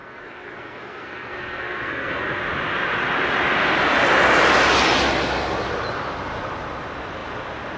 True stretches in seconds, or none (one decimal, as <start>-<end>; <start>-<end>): 2.4-7.8

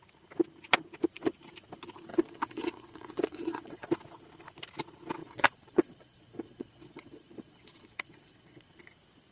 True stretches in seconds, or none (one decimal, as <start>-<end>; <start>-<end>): 0.0-2.1; 3.9-5.2; 8.7-9.3

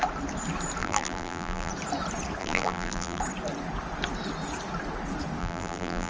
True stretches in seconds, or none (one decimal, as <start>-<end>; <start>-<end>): 0.0-0.8; 1.7-2.4; 3.2-5.4

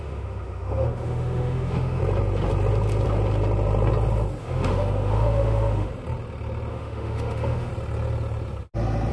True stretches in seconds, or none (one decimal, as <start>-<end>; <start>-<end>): 2.0-4.4; 5.9-6.7; 7.7-9.1

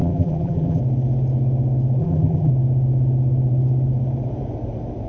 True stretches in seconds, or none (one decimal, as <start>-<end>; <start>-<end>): 0.8-2.0; 2.5-5.1

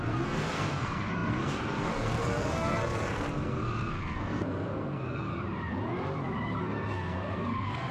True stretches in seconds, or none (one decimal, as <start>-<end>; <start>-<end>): 5.3-6.6

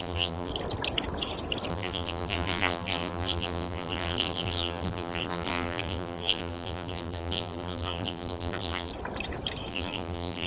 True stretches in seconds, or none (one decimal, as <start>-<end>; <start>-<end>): 0.5-1.7; 8.9-9.7

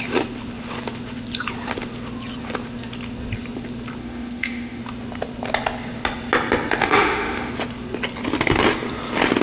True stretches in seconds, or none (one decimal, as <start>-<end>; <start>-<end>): 0.0-4.0; 4.8-6.8; 7.5-9.4